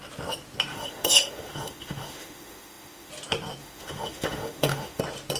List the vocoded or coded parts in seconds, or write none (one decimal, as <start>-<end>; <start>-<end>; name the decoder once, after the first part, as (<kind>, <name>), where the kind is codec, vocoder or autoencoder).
0.7-3.1 (autoencoder, DAC-VAE); 3.6-5.0